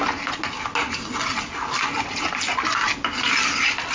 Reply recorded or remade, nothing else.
recorded